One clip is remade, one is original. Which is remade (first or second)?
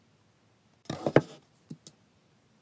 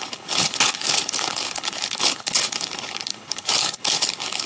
second